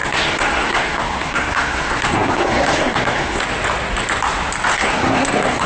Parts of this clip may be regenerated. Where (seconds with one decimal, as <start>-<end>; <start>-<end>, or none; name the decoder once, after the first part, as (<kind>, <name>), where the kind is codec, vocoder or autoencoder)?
0.0-3.4 (codec, SNAC); 4.7-5.7